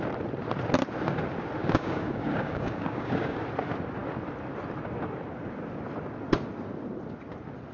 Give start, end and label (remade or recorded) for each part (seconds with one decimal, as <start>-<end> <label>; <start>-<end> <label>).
0.0-1.6 recorded; 1.6-3.4 remade; 3.4-7.7 recorded